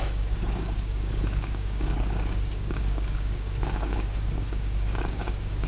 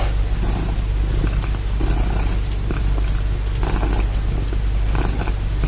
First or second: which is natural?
second